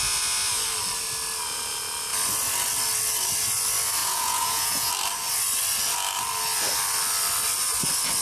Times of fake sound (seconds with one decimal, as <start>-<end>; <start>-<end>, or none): 4.0-4.9